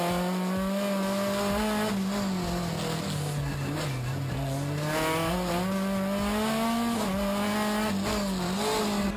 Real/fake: real